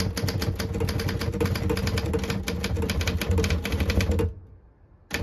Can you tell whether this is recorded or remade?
recorded